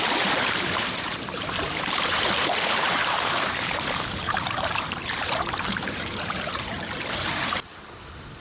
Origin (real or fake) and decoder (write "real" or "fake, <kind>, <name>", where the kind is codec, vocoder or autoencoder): fake, vocoder, BigVGAN v2